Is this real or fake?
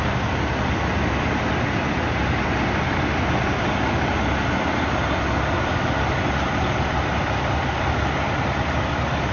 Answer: real